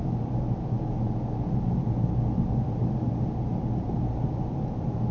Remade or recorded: recorded